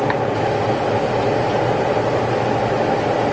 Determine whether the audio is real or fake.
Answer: real